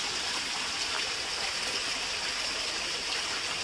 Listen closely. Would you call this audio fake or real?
real